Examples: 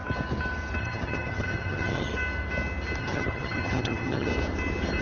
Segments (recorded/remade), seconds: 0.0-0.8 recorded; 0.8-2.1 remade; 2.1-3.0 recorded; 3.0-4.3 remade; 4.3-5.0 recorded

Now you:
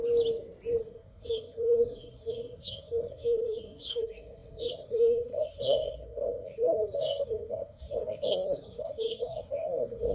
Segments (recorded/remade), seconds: 0.0-0.8 recorded; 0.8-10.1 remade